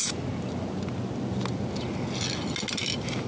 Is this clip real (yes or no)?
yes